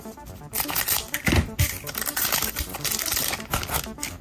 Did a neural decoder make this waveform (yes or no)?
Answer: no